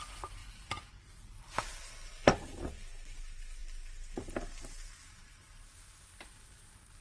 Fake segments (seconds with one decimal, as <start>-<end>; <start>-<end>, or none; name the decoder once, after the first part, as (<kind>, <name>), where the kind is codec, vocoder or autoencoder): 5.2-5.7 (vocoder, BigVGAN v2)